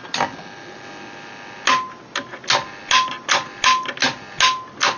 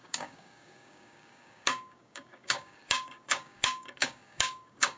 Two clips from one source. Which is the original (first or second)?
first